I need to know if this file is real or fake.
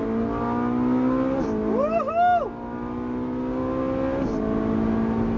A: real